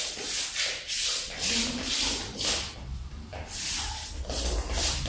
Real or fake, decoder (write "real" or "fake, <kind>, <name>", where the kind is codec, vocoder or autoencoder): real